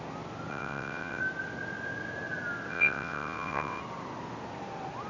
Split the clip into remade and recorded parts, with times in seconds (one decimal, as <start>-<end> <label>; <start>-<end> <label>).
0.0-0.5 recorded; 0.5-1.2 remade; 1.2-2.7 recorded; 2.7-3.8 remade; 3.8-5.1 recorded